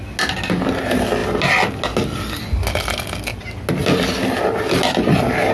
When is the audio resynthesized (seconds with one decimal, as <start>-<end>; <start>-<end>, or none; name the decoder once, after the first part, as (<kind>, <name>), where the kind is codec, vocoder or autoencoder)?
none